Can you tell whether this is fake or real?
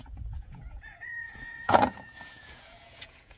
fake